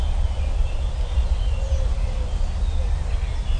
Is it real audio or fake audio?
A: real